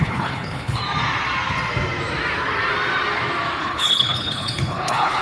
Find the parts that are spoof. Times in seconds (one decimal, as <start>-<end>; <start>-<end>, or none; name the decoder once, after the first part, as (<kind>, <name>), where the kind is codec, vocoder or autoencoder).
0.0-0.8 (codec, HILCodec); 3.6-5.2